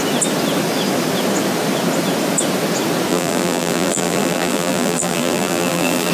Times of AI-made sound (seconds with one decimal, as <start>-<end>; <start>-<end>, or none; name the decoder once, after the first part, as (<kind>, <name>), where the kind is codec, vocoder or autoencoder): 3.1-6.1 (vocoder, BigVGAN v2)